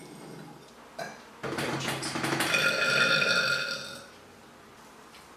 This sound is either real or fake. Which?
real